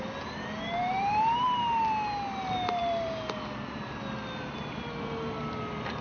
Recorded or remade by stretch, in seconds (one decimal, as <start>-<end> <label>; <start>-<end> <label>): 0.0-0.8 recorded; 0.8-1.6 remade; 1.6-2.8 recorded; 2.8-3.8 remade; 3.8-6.0 recorded